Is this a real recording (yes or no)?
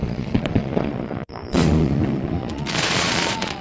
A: no